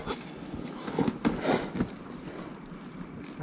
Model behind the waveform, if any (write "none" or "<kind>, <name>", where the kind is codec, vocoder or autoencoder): none